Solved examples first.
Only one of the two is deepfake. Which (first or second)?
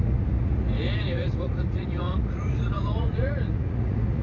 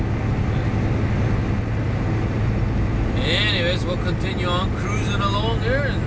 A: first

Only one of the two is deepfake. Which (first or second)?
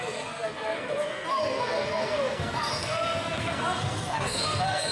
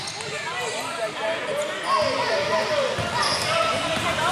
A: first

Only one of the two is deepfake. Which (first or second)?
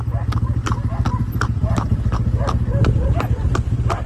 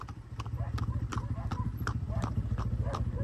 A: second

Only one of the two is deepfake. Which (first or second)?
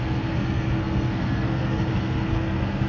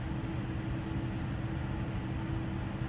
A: first